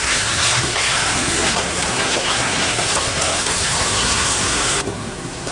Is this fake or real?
fake